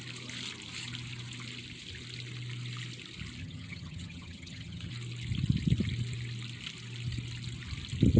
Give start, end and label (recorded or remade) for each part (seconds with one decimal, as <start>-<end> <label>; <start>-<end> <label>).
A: 0.0-3.4 recorded; 3.4-4.9 remade; 4.9-8.2 recorded